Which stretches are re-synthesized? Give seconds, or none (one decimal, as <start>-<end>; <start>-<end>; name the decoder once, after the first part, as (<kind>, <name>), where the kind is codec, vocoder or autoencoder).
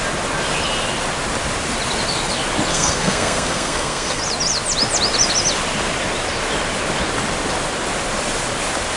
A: 2.7-4.2 (codec, SNAC)